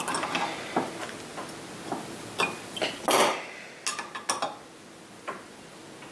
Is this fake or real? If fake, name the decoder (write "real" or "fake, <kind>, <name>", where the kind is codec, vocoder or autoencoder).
real